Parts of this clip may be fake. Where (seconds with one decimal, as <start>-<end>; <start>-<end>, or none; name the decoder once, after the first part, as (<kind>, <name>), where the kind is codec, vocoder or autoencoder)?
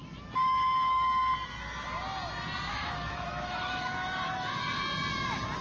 2.7-4.6 (autoencoder, DAC-VAE)